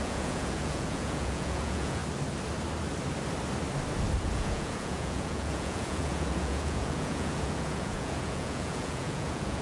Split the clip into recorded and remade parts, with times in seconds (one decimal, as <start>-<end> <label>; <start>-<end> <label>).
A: 0.0-2.0 remade; 2.0-4.2 recorded; 4.2-9.6 remade